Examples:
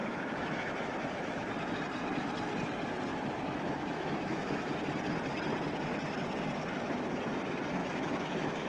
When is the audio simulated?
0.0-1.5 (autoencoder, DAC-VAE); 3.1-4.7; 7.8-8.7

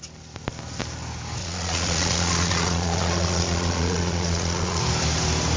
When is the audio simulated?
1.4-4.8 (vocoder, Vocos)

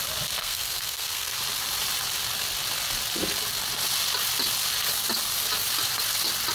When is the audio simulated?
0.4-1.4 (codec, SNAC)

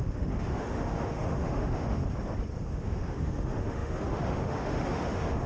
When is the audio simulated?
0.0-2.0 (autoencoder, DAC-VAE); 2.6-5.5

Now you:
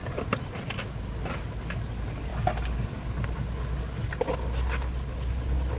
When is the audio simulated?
none

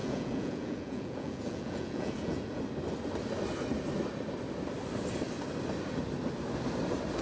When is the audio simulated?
0.0-2.6 (vocoder, Vocos)

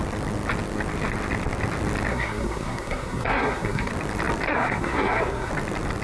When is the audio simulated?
2.1-3.9 (codec, SNAC); 4.5-5.5